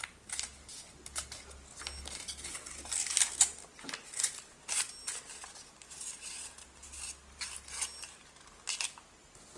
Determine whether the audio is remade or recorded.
recorded